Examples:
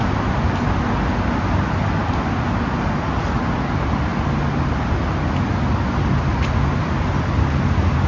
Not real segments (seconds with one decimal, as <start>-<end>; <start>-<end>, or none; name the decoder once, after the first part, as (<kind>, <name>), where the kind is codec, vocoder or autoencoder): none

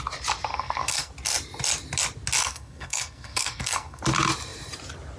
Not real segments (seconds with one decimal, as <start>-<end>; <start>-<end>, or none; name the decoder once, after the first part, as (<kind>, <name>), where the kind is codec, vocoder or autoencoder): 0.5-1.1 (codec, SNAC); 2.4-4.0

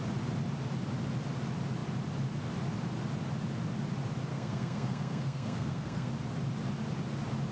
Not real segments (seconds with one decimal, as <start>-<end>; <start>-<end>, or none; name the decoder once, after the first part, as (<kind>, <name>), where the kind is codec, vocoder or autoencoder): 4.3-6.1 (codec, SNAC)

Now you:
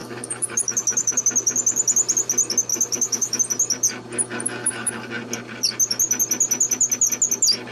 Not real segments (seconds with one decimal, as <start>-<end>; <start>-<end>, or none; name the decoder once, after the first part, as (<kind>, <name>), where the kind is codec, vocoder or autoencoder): 0.0-1.2 (autoencoder, DAC-VAE); 2.7-3.4; 4.6-5.1

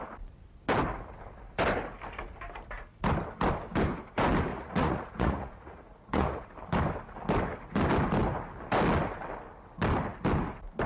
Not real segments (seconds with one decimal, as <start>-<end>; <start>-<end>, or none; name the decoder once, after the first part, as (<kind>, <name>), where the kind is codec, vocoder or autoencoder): 4.5-6.5 (vocoder, Vocos)

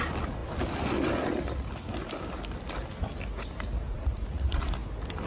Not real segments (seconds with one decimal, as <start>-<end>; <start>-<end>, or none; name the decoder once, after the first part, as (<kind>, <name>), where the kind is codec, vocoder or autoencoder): 3.9-4.6 (vocoder, Vocos)